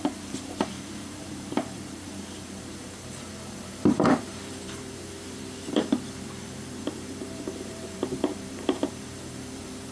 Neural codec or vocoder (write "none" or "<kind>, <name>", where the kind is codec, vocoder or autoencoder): vocoder, BigVGAN v2